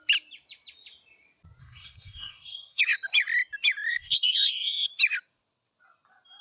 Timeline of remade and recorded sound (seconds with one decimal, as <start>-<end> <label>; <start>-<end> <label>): 0.0-1.6 recorded; 1.6-2.8 remade; 2.8-3.9 recorded; 3.9-4.9 remade; 4.9-6.4 recorded